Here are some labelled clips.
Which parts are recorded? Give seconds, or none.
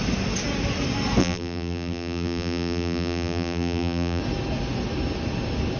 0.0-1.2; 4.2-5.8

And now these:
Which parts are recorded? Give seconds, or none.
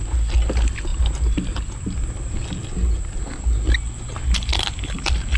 0.0-5.4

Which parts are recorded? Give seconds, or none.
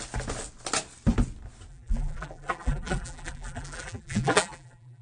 0.0-1.7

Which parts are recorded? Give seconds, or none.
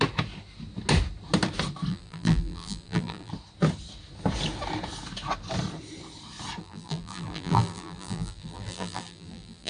0.0-1.9; 3.3-6.6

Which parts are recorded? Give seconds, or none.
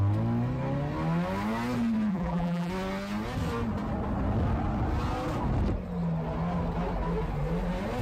0.0-2.1; 2.7-8.0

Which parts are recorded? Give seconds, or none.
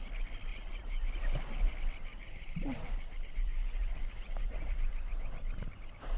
0.0-0.5; 1.1-2.1; 5.8-6.2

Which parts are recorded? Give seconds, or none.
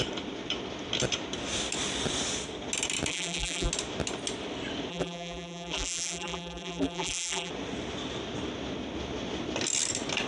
0.0-3.1; 3.7-4.9; 7.5-10.3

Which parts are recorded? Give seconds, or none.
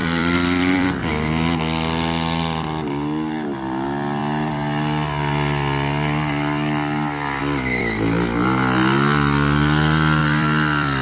1.0-10.2